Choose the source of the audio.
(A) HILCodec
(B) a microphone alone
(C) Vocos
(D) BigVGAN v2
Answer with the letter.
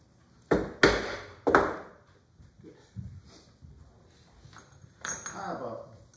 B